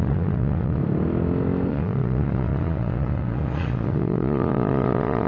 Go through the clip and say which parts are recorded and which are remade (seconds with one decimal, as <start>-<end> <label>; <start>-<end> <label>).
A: 0.0-0.8 remade; 0.8-1.7 recorded; 1.7-5.3 remade